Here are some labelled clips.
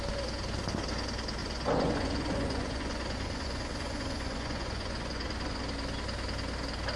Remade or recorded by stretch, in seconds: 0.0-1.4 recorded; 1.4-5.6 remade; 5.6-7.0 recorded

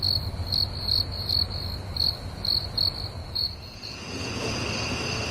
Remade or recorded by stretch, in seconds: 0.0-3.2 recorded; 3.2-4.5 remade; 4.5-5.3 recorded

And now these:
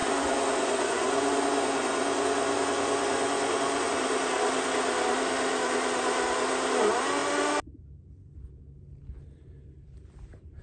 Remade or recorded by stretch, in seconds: 0.0-4.0 remade; 4.0-10.6 recorded